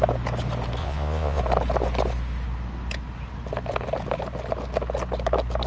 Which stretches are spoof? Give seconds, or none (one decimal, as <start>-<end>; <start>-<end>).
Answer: 0.8-1.4